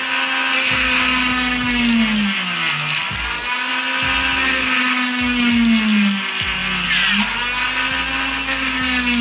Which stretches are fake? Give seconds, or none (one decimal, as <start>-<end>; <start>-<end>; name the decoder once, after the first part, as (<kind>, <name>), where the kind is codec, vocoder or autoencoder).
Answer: none